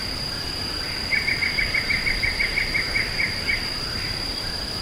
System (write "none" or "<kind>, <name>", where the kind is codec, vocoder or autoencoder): vocoder, BigVGAN v2